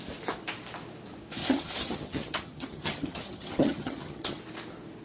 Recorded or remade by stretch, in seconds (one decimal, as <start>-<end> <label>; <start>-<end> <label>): 0.0-1.4 recorded; 1.4-4.4 remade; 4.4-5.0 recorded

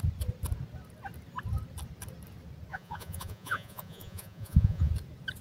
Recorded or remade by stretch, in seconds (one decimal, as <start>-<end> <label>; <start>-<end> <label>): 0.0-2.7 recorded; 2.7-4.9 remade; 4.9-5.4 recorded

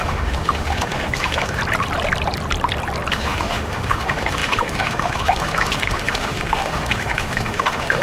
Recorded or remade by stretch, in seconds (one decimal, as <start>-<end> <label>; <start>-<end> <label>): 0.0-1.6 remade; 1.6-3.1 recorded; 3.1-8.0 remade

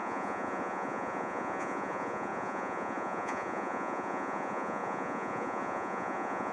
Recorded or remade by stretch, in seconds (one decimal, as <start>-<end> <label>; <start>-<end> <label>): 0.0-6.5 remade

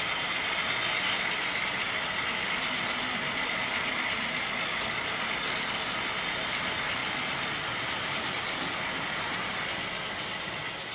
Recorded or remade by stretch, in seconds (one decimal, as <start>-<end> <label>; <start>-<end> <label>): 0.0-7.0 recorded; 7.0-8.3 remade; 8.3-10.9 recorded

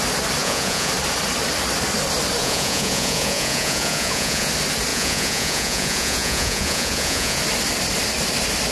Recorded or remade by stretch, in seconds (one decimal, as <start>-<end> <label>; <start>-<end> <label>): 0.0-0.4 recorded; 0.4-0.9 remade; 0.9-2.4 recorded; 2.4-4.5 remade; 4.5-4.9 recorded; 4.9-7.4 remade; 7.4-8.7 recorded

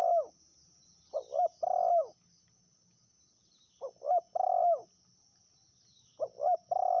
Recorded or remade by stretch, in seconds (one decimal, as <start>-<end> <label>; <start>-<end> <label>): 0.0-6.1 recorded; 6.1-7.0 remade

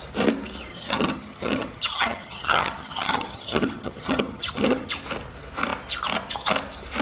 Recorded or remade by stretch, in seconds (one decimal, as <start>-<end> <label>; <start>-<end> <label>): 0.0-0.7 recorded; 0.7-4.9 remade; 4.9-7.0 recorded